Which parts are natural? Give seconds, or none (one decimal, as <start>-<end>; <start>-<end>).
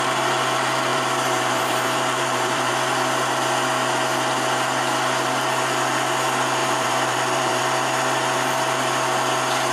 0.0-0.9; 2.7-6.6; 7.6-9.7